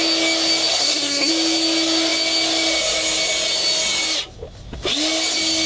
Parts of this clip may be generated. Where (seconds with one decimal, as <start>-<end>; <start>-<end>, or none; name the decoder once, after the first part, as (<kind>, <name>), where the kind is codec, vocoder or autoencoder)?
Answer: 0.7-1.3 (codec, SNAC)